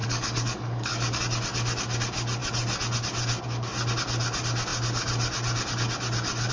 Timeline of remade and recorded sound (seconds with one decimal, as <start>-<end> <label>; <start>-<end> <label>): 0.0-1.2 remade; 1.2-6.5 recorded